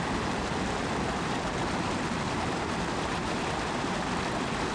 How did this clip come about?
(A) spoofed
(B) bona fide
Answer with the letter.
B